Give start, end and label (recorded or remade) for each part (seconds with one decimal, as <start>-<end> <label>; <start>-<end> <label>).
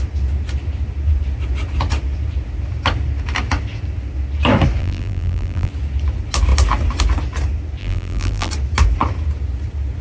0.0-4.8 recorded; 4.8-5.7 remade; 5.7-7.8 recorded; 7.8-8.5 remade; 8.5-10.0 recorded